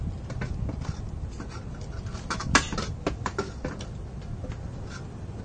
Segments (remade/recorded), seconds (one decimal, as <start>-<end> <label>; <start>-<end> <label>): 0.0-4.7 recorded; 4.7-5.4 remade